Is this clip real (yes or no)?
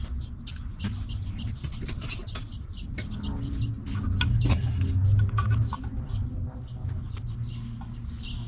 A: yes